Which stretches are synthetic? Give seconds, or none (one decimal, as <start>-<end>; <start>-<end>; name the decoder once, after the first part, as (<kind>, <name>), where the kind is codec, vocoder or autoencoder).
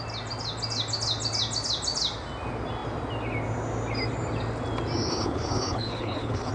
5.1-6.5 (codec, HILCodec)